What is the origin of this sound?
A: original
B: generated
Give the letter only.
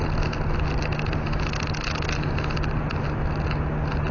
A